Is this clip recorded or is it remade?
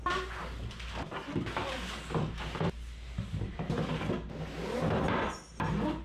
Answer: recorded